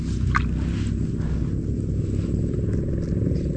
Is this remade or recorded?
recorded